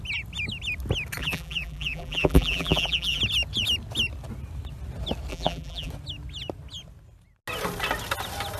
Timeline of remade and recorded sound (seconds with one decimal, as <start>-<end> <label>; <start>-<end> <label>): 0.0-1.2 recorded; 1.2-3.2 remade; 3.2-5.3 recorded; 5.3-5.9 remade; 5.9-8.6 recorded